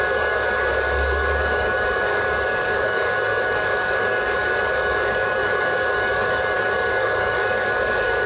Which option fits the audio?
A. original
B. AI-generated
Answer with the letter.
B